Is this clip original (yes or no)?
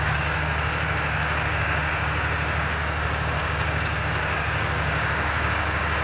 no